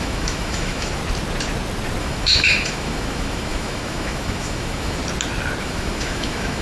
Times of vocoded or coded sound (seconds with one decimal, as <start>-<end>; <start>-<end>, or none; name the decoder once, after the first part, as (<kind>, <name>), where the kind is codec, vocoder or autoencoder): 0.0-1.0 (autoencoder, DAC-VAE); 2.0-5.0; 5.6-6.6

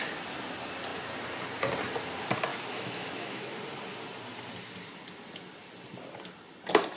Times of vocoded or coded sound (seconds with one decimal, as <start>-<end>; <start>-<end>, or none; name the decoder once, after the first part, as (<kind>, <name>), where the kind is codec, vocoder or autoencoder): 2.5-3.6 (autoencoder, DAC-VAE)

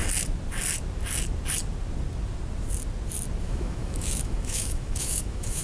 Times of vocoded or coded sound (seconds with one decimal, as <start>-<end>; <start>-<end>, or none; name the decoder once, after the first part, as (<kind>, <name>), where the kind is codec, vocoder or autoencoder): 3.4-5.6 (autoencoder, DAC-VAE)

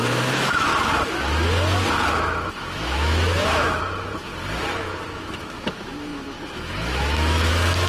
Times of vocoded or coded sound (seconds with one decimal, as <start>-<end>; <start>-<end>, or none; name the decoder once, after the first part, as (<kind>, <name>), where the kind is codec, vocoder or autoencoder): 0.0-0.7 (autoencoder, DAC-VAE); 2.1-4.3; 4.8-7.9

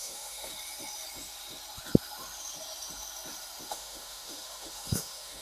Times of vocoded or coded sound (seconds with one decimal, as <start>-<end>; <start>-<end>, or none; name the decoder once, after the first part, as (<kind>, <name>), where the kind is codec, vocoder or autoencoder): 0.0-0.5 (autoencoder, DAC-VAE); 3.7-5.4

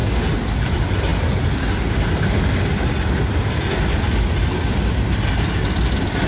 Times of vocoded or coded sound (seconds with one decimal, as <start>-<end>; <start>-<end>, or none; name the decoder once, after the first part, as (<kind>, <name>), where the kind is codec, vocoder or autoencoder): none

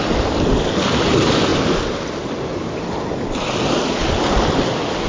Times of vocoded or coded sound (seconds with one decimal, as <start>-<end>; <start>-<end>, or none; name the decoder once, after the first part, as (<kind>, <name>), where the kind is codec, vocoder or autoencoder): none